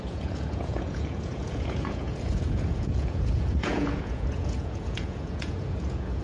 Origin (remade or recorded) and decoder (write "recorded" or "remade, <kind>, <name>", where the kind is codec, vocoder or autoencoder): remade, vocoder, Vocos